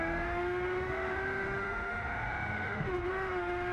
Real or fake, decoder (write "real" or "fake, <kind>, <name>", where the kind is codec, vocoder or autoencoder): fake, autoencoder, DAC-VAE